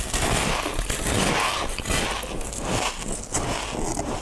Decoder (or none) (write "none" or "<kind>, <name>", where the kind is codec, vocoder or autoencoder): none